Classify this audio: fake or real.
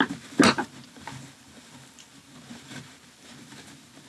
real